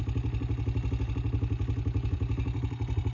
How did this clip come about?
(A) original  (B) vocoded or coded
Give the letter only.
A